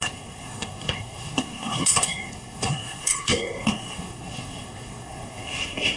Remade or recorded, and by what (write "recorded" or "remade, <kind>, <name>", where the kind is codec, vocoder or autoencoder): remade, codec, SNAC